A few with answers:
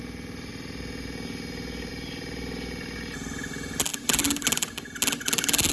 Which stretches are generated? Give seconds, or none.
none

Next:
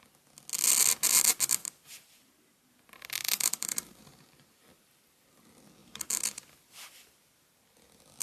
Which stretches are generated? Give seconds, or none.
1.6-2.7 (vocoder, BigVGAN v2); 3.2-4.6; 5.8-6.9

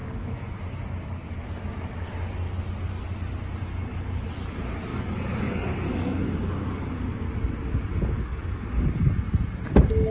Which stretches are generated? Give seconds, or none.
0.0-0.6 (codec, DAC); 3.8-4.3; 4.9-7.3; 7.9-9.1

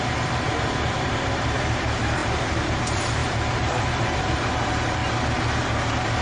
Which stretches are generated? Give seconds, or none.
0.0-5.0 (vocoder, BigVGAN v2)

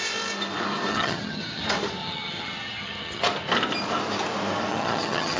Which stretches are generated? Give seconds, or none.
0.9-1.6 (vocoder, HiFi-GAN); 2.0-3.2; 4.7-5.4

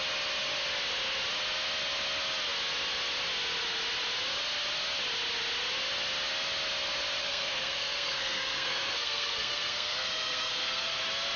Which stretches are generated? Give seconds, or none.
7.2-11.0 (codec, SNAC)

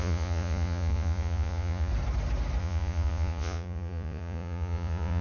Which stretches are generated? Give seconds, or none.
0.0-1.9 (vocoder, Vocos); 2.6-5.2

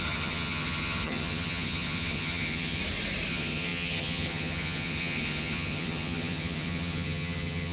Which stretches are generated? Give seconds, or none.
0.0-2.8 (vocoder, HiFi-GAN); 3.3-7.7